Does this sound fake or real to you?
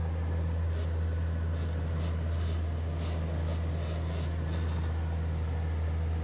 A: real